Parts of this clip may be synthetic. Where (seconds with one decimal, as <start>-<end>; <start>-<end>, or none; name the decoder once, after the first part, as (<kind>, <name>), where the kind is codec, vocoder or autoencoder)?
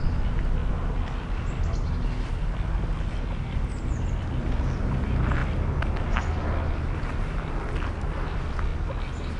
0.0-0.6 (vocoder, BigVGAN v2); 4.1-5.4; 8.0-9.4